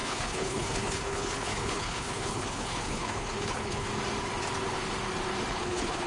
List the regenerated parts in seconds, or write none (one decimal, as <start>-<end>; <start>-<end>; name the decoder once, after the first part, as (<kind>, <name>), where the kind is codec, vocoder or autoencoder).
0.0-3.9 (codec, HILCodec); 5.5-6.1